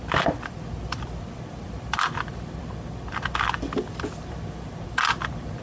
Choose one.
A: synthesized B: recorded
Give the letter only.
A